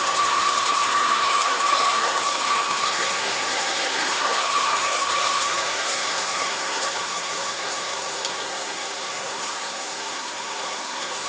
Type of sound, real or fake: fake